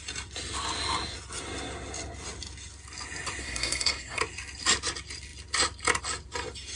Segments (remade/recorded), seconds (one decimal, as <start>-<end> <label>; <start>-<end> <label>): 0.0-3.4 recorded; 3.4-4.2 remade; 4.2-6.8 recorded